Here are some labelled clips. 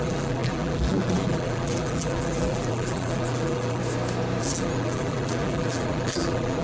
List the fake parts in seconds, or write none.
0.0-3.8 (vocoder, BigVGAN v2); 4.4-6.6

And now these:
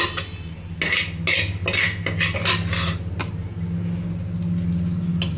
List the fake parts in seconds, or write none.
none

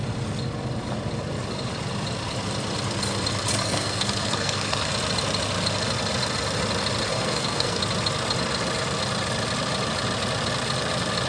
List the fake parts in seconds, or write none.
3.6-4.9 (codec, SNAC); 7.1-7.8

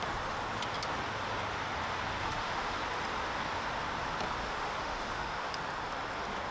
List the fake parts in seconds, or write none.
2.2-2.8 (autoencoder, DAC-VAE); 4.8-5.5

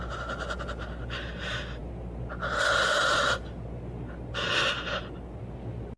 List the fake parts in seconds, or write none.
none